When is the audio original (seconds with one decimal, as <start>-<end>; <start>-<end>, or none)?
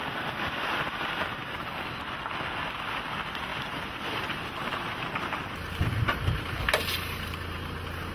0.0-3.5; 5.2-8.1